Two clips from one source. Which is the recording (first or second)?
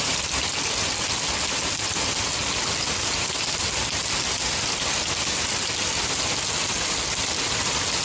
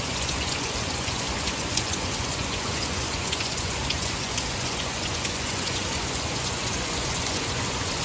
first